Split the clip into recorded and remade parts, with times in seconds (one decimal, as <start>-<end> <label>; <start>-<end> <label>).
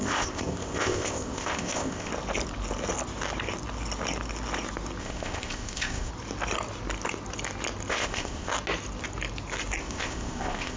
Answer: 0.0-2.1 remade; 2.1-5.0 recorded; 5.0-6.1 remade; 6.1-7.9 recorded; 7.9-8.5 remade; 8.5-9.8 recorded; 9.8-10.8 remade